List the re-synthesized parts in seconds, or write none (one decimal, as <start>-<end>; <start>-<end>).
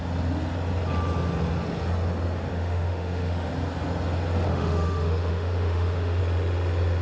2.5-3.5; 4.5-6.2